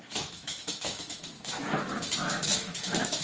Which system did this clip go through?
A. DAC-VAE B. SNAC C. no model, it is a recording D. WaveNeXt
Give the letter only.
A